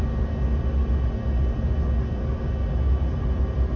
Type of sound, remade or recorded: recorded